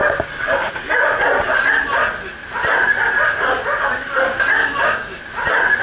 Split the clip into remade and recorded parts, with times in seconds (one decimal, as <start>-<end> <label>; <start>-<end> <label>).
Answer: 0.0-4.6 recorded; 4.6-5.2 remade; 5.2-5.8 recorded